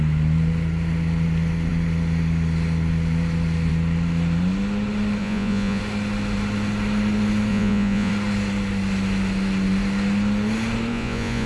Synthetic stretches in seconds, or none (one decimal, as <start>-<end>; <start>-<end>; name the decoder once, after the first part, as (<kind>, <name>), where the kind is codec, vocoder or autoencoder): 5.2-5.8 (vocoder, Vocos); 7.5-8.1; 10.9-11.5